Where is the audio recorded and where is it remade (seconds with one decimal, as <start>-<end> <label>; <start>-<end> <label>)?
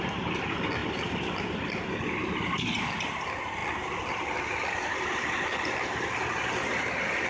0.0-0.8 recorded; 0.8-1.4 remade; 1.4-3.6 recorded; 3.6-4.4 remade; 4.4-7.3 recorded